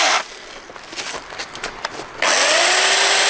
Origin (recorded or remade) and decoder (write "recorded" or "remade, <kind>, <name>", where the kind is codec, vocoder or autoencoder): recorded